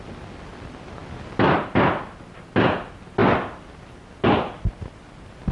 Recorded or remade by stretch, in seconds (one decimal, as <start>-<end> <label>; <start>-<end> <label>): 0.0-5.5 recorded